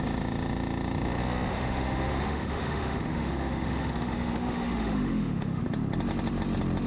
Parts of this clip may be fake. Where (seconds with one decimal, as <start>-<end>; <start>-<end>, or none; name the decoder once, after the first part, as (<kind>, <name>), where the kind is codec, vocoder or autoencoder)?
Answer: 1.5-5.6 (autoencoder, DAC-VAE)